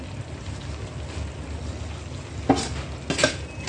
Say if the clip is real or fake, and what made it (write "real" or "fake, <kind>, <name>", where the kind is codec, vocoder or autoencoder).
real